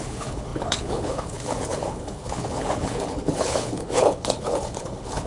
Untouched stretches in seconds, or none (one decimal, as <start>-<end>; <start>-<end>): none